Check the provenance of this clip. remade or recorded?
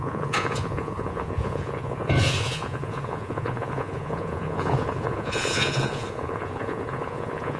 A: remade